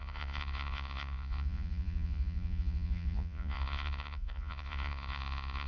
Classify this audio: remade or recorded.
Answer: remade